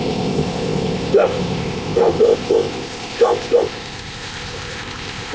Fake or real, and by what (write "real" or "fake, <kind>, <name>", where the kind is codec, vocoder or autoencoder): fake, codec, ZipCodec